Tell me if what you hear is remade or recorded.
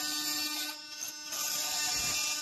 recorded